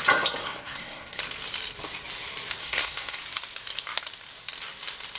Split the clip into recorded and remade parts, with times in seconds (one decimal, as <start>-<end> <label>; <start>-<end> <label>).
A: 0.0-0.4 recorded; 0.4-1.2 remade; 1.2-2.6 recorded; 2.6-3.2 remade; 3.2-5.2 recorded